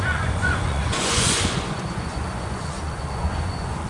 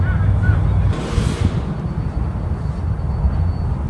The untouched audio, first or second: second